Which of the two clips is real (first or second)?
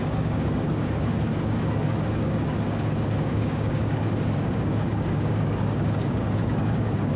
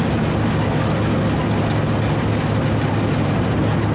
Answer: second